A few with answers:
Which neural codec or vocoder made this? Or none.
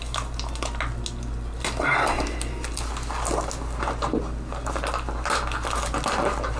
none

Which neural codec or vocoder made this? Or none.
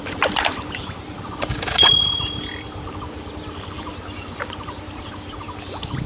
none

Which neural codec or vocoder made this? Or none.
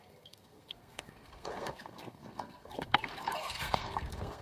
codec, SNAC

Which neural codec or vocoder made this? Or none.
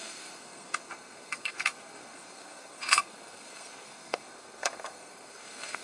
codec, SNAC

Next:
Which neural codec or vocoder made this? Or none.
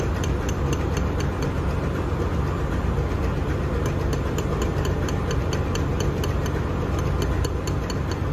none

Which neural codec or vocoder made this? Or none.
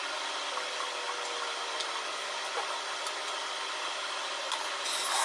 none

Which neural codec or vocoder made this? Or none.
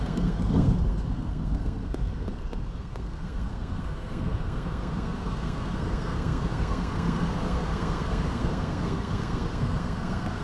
codec, SNAC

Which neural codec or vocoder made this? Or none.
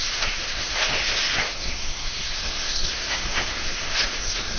codec, SNAC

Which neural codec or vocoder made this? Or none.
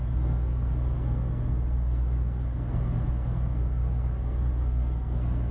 codec, SNAC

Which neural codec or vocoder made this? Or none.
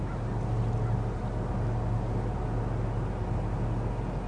none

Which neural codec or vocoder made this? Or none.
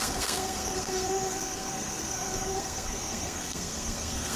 codec, SNAC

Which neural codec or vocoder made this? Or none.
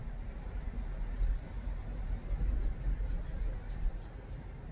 none